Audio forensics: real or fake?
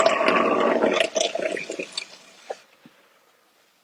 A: real